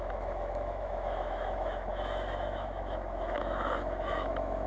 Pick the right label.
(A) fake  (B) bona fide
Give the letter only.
A